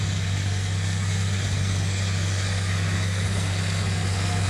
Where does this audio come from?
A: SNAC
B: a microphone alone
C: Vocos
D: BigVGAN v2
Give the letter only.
A